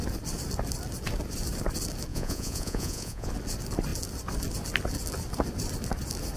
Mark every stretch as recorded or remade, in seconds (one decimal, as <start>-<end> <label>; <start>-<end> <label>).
0.0-2.1 recorded; 2.1-3.3 remade; 3.3-6.4 recorded